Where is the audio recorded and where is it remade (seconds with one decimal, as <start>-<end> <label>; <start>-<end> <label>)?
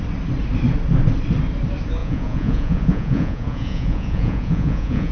0.0-2.0 recorded; 2.0-5.1 remade